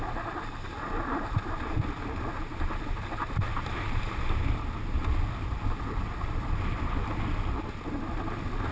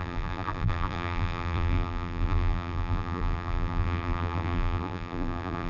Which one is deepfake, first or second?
second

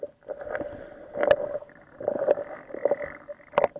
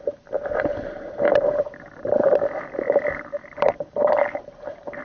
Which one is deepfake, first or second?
second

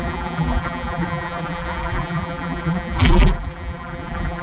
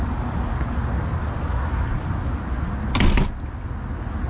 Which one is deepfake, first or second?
first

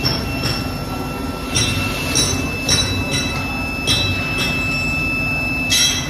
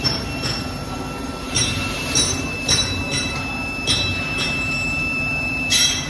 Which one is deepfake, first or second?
second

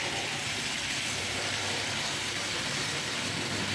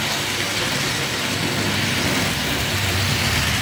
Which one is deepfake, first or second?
first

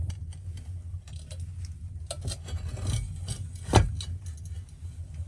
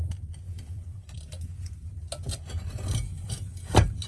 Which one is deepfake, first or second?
second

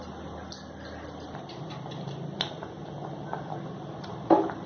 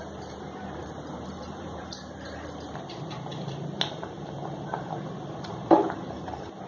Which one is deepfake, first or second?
second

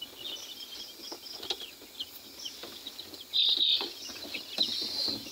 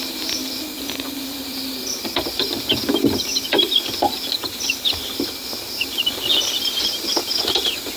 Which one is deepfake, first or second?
second